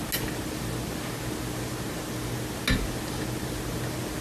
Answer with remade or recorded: recorded